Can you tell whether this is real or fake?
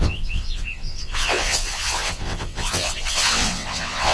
fake